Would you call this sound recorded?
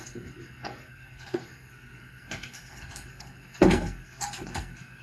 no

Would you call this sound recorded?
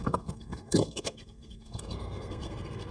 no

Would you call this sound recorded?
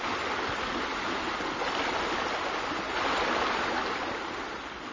yes